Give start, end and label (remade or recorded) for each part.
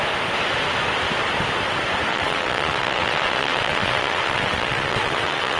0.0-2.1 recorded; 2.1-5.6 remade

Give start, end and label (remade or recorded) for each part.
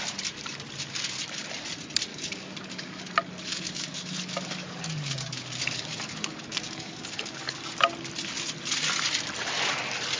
0.0-2.1 recorded; 2.1-3.0 remade; 3.0-3.5 recorded; 3.5-7.9 remade; 7.9-10.2 recorded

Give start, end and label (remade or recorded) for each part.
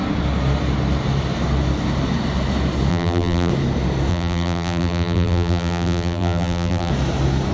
0.0-2.9 recorded; 2.9-3.5 remade; 3.5-4.1 recorded; 4.1-6.9 remade; 6.9-7.5 recorded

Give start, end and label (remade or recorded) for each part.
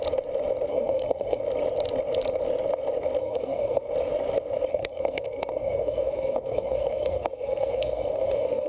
0.0-0.7 recorded; 0.7-1.4 remade; 1.4-3.2 recorded; 3.2-3.9 remade; 3.9-4.7 recorded; 4.7-8.7 remade